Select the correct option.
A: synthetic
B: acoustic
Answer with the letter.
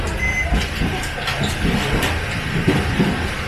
B